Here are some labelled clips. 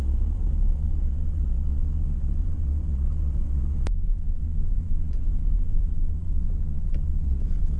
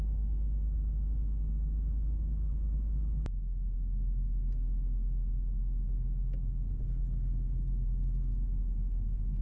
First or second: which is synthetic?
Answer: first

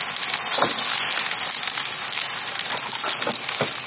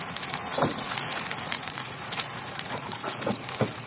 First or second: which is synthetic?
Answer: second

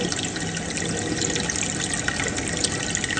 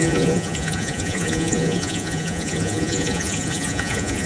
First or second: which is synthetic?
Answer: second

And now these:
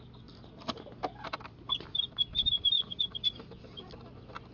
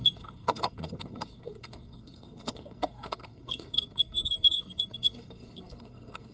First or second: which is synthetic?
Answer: second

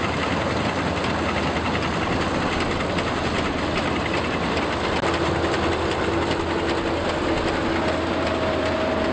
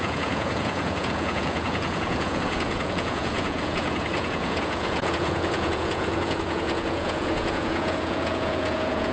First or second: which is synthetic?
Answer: second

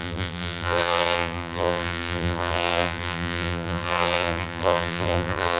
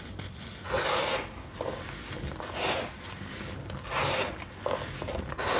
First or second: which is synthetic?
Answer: first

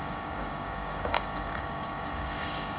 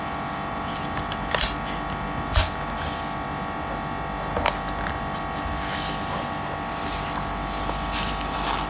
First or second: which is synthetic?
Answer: first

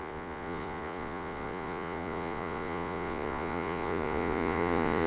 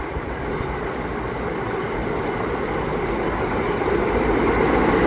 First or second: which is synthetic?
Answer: first